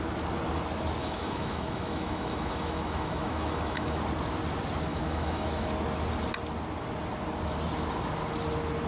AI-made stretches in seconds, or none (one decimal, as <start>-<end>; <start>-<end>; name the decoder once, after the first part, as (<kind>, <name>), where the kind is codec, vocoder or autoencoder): 1.0-4.0 (autoencoder, DAC-VAE); 4.9-5.7